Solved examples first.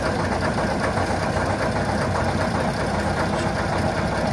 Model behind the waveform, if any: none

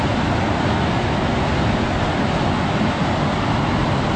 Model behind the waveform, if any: none